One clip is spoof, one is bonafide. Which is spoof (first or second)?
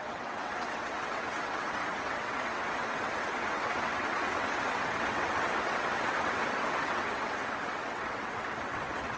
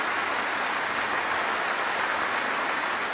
first